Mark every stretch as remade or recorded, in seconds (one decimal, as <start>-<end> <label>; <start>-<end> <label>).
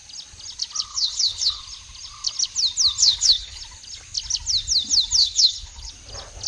0.0-0.9 recorded; 0.9-1.6 remade; 1.6-3.0 recorded; 3.0-3.6 remade; 3.6-5.2 recorded; 5.2-5.9 remade; 5.9-6.5 recorded